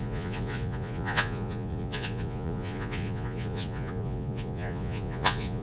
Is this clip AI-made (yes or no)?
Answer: yes